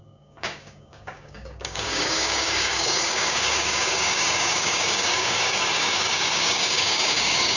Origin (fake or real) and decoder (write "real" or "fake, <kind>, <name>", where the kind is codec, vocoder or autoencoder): fake, codec, DAC